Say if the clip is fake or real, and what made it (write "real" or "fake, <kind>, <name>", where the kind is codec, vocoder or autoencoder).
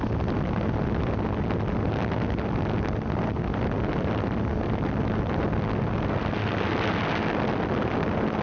real